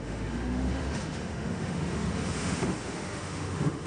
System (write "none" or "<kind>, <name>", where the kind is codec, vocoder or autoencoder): autoencoder, DAC-VAE